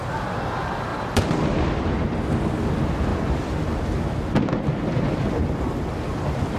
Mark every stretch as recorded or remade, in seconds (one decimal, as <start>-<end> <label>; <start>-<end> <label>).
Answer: 0.0-6.6 recorded